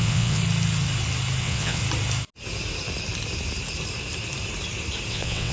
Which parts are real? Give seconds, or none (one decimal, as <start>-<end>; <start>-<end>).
0.4-1.4; 1.8-5.1